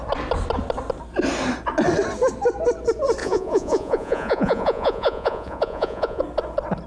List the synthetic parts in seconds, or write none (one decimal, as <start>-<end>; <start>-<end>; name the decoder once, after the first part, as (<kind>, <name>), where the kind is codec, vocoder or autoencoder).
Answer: 3.2-6.2 (vocoder, Vocos)